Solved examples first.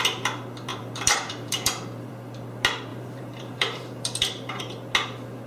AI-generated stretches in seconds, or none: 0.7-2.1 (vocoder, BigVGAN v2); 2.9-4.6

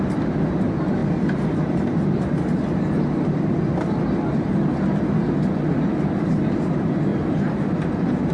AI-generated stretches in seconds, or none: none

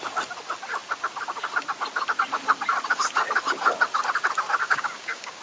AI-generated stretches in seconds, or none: 4.6-5.4 (codec, DAC)